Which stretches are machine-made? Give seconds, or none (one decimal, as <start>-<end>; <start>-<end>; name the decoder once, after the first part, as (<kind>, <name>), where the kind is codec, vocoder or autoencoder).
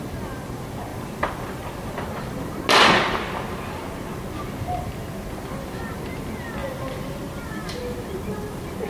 0.9-1.9 (vocoder, BigVGAN v2); 6.6-7.8